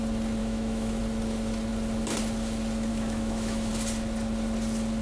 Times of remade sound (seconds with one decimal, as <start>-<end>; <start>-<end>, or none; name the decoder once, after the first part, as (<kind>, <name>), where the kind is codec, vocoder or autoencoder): 0.4-1.0 (autoencoder, DAC-VAE); 2.9-3.7